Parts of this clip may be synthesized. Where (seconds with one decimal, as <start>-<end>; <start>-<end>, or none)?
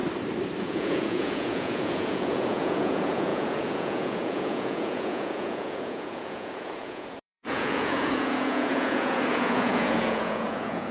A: 0.6-10.9